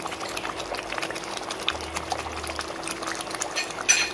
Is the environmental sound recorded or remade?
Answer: recorded